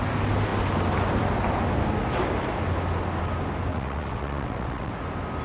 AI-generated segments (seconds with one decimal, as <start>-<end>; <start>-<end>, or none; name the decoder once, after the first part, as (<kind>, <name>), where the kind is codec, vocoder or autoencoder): 3.7-4.9 (vocoder, WaveNeXt)

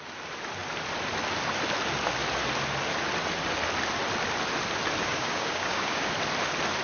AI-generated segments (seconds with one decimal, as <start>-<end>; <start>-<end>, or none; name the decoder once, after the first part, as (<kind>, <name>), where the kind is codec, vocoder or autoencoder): 5.0-6.1 (codec, DAC)

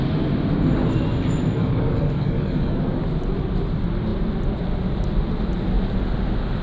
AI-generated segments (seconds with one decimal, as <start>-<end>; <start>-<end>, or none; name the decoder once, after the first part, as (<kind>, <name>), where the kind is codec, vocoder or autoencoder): 1.6-2.8 (codec, DAC)

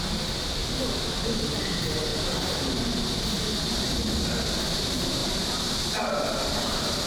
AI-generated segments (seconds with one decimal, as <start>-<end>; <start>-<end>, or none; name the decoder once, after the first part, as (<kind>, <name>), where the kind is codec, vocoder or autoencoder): 0.0-0.6 (vocoder, BigVGAN v2); 1.5-7.1